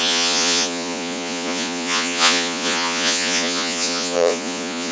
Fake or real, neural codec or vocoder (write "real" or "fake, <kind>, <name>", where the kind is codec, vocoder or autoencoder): fake, vocoder, Vocos